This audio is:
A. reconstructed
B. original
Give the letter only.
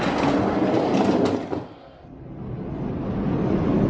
B